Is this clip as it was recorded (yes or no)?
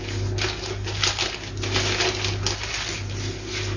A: yes